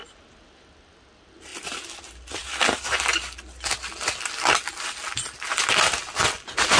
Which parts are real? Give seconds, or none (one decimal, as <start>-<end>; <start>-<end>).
0.0-6.8